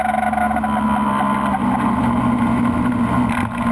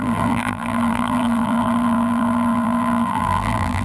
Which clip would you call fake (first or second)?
second